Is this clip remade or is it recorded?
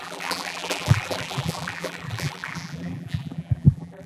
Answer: remade